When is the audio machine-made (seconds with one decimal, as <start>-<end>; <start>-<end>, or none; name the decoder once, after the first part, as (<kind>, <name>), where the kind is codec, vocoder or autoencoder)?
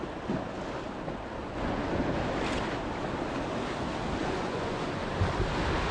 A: 1.4-2.0 (vocoder, Vocos); 4.2-5.1